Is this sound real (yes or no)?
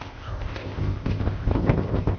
no